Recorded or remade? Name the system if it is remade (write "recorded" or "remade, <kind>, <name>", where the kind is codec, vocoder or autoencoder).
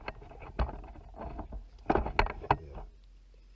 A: recorded